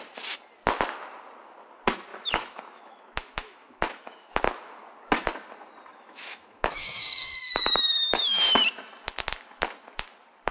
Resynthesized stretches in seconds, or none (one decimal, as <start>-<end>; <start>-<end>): 2.1-4.4; 5.9-8.4